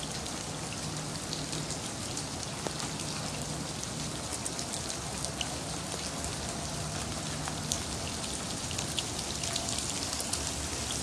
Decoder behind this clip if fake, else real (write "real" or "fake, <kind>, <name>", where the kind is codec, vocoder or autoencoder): real